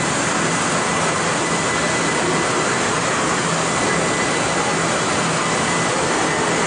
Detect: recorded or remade recorded